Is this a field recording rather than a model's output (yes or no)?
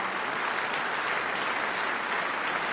yes